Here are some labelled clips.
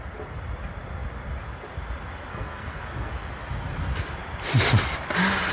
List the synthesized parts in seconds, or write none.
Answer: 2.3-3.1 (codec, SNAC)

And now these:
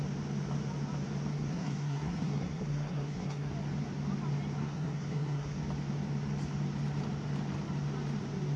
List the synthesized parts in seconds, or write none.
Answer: 1.3-3.5 (codec, SNAC); 4.6-5.6